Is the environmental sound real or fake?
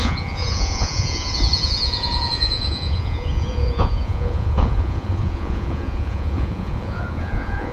fake